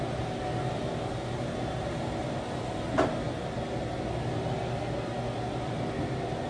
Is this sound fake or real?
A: real